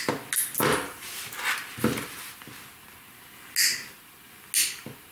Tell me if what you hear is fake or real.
real